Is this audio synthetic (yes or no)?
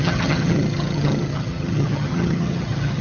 yes